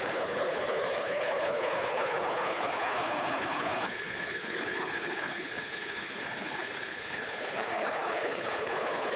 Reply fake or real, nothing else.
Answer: fake